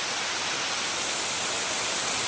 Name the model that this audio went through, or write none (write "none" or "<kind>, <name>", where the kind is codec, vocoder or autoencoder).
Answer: none